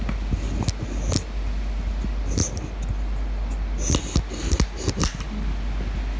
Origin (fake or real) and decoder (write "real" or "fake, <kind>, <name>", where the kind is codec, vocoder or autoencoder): real